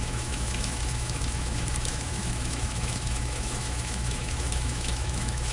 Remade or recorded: remade